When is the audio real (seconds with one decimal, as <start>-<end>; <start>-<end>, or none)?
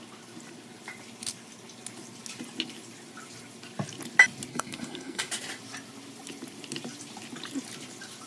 0.0-4.5; 5.3-8.3